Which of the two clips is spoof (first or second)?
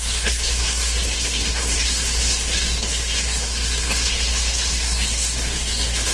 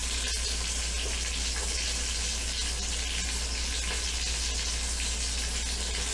first